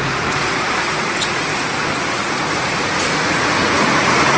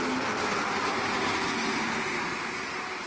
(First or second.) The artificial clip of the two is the first